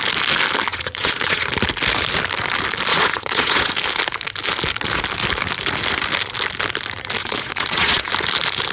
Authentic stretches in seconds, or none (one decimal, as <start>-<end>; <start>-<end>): 0.0-0.7; 1.5-2.9; 3.7-7.2; 8.1-8.7